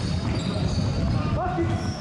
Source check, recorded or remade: recorded